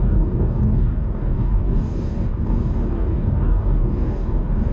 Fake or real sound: fake